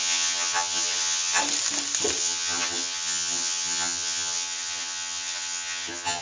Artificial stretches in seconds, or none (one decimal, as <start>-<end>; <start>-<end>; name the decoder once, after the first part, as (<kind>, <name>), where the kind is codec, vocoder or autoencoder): 0.0-1.4 (vocoder, HiFi-GAN); 2.2-6.2